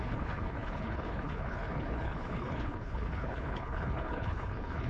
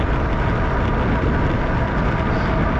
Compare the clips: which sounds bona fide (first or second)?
second